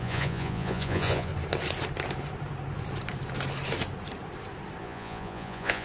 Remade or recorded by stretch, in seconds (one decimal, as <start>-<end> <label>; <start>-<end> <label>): 0.0-1.3 remade; 1.3-4.8 recorded; 4.8-5.8 remade